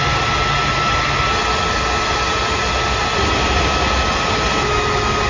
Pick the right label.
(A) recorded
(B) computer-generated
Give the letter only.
A